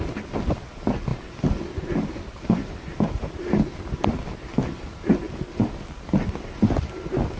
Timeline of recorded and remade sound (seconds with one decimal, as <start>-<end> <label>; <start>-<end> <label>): 0.0-7.4 recorded

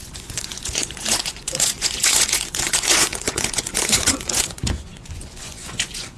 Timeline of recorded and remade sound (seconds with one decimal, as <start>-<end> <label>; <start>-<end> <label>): 0.0-6.2 remade

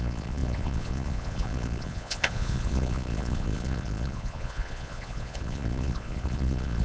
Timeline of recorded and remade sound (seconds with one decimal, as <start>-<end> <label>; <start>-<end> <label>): 0.0-6.8 remade

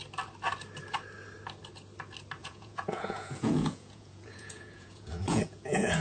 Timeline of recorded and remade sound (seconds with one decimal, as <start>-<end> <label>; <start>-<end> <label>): 0.0-2.4 recorded; 2.4-6.0 remade

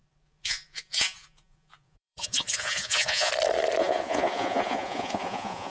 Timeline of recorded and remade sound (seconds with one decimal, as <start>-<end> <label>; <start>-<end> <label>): 0.0-3.3 remade; 3.3-3.8 recorded; 3.8-5.7 remade